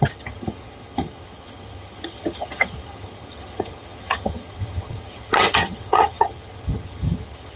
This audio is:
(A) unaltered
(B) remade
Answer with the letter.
B